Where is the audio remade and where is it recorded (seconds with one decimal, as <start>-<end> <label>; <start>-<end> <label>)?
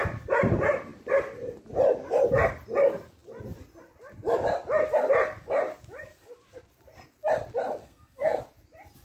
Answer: 0.0-7.8 recorded; 7.8-8.4 remade; 8.4-9.0 recorded